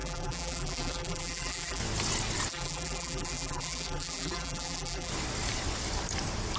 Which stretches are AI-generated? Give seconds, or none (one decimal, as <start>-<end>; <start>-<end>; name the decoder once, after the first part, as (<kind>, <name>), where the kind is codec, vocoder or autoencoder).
0.0-1.8 (vocoder, BigVGAN v2); 2.5-5.1